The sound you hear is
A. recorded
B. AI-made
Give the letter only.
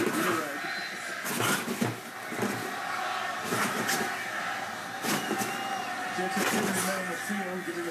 A